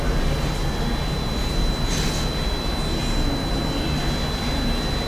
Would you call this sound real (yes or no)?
yes